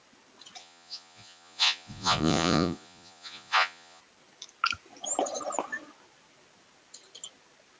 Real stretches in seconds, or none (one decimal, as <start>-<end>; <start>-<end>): 0.0-0.6; 4.0-7.8